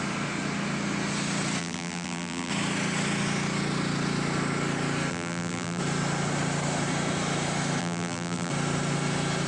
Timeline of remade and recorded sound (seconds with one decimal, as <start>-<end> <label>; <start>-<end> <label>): 0.0-1.6 recorded; 1.6-2.5 remade; 2.5-5.1 recorded; 5.1-5.8 remade; 5.8-7.8 recorded; 7.8-8.5 remade; 8.5-9.5 recorded